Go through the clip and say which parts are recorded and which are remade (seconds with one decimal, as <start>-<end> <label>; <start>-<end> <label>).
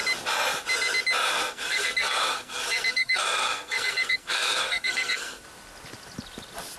0.0-1.3 recorded; 1.3-5.4 remade; 5.4-6.8 recorded